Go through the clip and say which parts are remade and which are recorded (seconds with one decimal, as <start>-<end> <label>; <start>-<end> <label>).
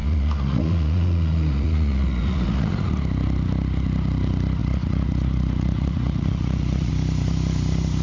0.0-2.9 remade; 2.9-4.6 recorded; 4.6-6.9 remade; 6.9-8.0 recorded